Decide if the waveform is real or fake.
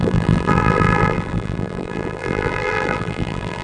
fake